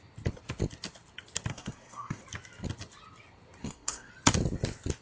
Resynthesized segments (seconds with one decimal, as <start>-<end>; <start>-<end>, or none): 1.5-2.2; 3.6-4.1